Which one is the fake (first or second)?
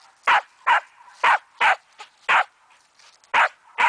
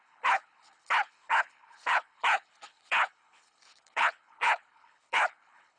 second